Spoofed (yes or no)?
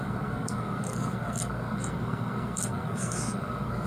yes